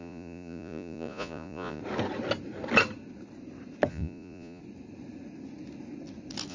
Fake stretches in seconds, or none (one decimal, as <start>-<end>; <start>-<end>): 0.0-1.8; 3.9-4.6